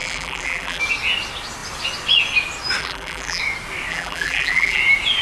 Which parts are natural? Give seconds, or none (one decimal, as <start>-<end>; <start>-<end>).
0.8-2.8; 3.4-3.9; 4.8-5.2